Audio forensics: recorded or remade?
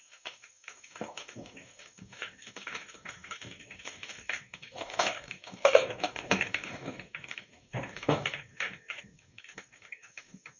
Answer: remade